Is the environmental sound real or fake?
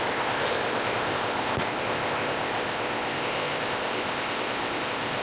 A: fake